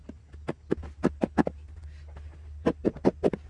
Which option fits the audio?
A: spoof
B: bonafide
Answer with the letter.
B